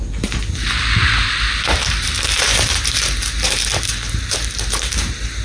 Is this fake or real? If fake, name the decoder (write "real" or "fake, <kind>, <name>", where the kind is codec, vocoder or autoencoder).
fake, vocoder, BigVGAN v2